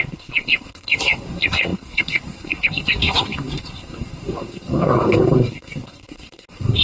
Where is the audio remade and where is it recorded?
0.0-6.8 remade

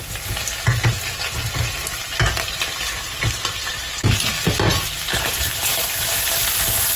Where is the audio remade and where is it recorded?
0.0-4.7 recorded; 4.7-6.5 remade; 6.5-7.0 recorded